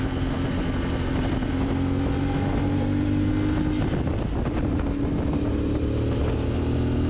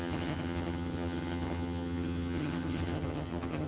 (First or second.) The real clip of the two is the first